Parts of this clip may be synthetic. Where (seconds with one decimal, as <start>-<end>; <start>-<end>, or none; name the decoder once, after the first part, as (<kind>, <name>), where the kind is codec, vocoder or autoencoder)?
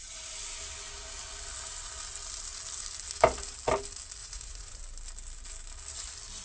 4.2-4.8 (vocoder, Vocos)